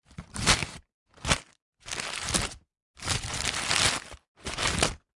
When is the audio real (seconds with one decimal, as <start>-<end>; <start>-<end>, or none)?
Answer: 0.0-5.2